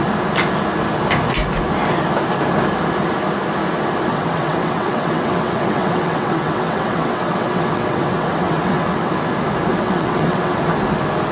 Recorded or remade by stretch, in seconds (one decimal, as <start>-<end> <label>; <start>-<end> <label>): 0.0-4.1 recorded; 4.1-9.1 remade; 9.1-9.7 recorded; 9.7-10.6 remade; 10.6-11.3 recorded